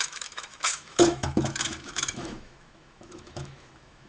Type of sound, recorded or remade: remade